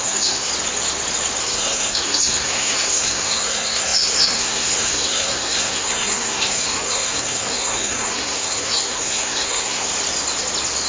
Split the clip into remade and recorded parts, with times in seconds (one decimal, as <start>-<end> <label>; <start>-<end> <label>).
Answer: 0.0-0.5 remade; 0.5-1.4 recorded; 1.4-9.9 remade; 9.9-10.9 recorded